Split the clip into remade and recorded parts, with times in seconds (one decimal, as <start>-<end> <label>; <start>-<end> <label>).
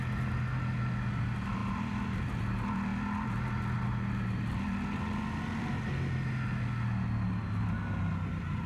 0.0-1.6 recorded; 1.6-2.4 remade; 2.4-8.7 recorded